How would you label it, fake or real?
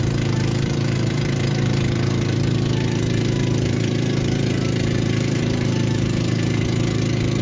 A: fake